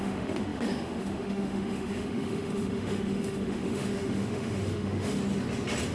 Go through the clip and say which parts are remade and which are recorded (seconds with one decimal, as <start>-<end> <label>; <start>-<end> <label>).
0.0-5.2 remade; 5.2-5.9 recorded